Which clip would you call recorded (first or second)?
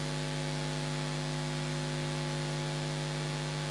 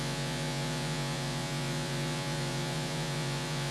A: first